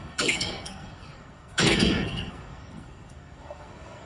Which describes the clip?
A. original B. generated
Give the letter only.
B